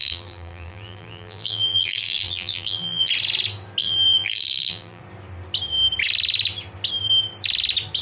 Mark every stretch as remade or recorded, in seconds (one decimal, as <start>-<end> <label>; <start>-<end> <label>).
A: 0.0-3.1 remade; 3.1-3.8 recorded; 3.8-5.0 remade; 5.0-8.0 recorded